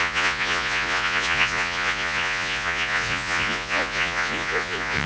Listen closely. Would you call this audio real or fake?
fake